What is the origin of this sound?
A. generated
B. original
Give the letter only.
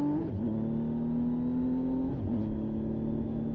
B